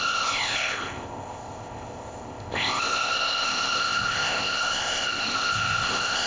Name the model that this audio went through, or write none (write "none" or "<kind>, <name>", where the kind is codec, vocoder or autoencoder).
codec, ZipCodec